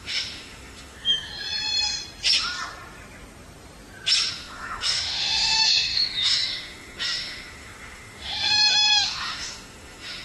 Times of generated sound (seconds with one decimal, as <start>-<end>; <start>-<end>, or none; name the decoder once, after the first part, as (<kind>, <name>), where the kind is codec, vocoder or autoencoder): 0.0-1.3 (autoencoder, DAC-VAE); 4.3-10.2